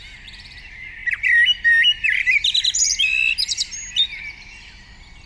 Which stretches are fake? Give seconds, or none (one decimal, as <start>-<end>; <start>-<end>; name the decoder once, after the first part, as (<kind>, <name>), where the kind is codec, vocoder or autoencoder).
none